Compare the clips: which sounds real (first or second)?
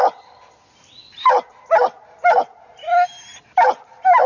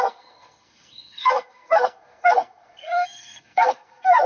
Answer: first